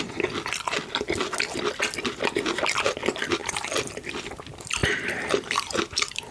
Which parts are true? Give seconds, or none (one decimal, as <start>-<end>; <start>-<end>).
0.0-3.4; 4.1-4.8